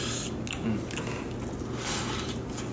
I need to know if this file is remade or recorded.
recorded